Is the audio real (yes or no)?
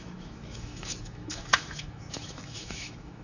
no